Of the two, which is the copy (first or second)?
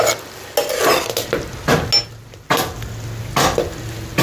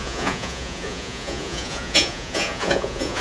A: second